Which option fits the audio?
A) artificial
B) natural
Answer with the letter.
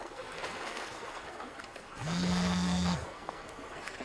A